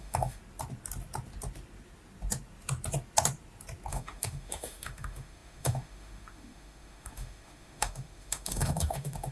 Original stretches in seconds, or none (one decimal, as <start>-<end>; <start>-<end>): 0.4-3.9